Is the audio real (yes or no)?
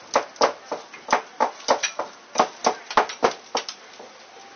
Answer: yes